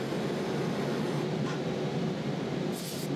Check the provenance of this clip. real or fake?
real